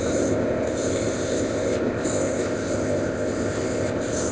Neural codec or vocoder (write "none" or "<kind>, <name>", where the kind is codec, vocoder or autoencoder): codec, ZipCodec